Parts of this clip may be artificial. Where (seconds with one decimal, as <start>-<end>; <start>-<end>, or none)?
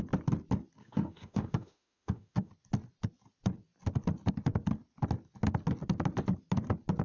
0.8-2.5